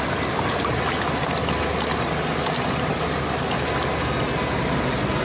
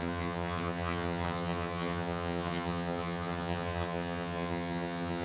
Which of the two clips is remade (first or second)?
second